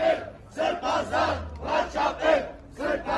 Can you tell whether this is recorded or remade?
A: recorded